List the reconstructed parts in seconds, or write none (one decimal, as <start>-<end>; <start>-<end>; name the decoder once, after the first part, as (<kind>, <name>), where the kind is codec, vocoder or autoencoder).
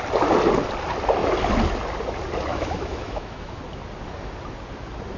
2.5-3.6 (autoencoder, DAC-VAE)